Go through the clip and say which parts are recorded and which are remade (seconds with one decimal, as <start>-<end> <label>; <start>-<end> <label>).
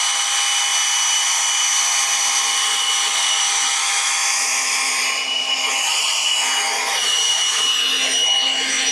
0.0-3.8 recorded; 3.8-4.9 remade; 4.9-8.9 recorded